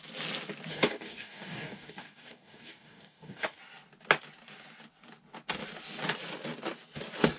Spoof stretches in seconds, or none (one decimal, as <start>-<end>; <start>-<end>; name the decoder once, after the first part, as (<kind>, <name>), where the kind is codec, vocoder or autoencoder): 0.7-3.6 (codec, DAC)